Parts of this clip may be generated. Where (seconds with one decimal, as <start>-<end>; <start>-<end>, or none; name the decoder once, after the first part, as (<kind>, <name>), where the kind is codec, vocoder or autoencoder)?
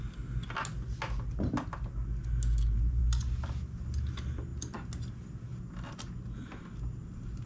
none